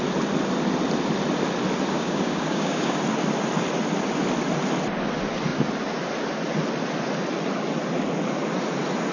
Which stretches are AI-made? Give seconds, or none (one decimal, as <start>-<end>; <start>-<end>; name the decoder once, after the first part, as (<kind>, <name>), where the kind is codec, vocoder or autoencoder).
1.9-3.0 (codec, DAC)